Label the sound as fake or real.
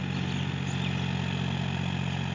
real